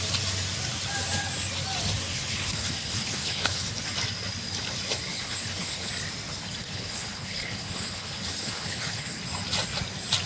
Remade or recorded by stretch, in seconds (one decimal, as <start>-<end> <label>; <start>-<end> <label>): 0.0-2.1 recorded; 2.1-3.7 remade; 3.7-5.1 recorded; 5.1-5.9 remade; 5.9-6.6 recorded; 6.6-9.2 remade; 9.2-10.3 recorded